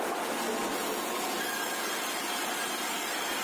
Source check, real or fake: real